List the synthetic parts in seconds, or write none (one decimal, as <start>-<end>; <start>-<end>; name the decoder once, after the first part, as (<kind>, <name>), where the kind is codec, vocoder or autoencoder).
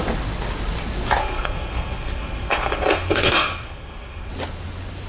1.2-4.3 (codec, SNAC)